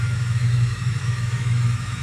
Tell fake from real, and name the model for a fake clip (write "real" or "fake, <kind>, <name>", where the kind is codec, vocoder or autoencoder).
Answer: fake, autoencoder, DAC-VAE